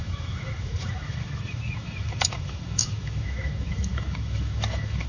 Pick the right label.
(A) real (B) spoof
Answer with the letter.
B